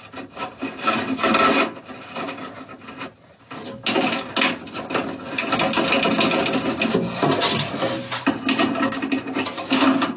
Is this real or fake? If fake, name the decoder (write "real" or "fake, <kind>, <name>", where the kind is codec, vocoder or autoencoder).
real